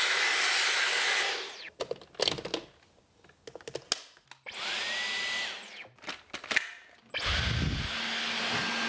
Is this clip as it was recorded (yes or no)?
yes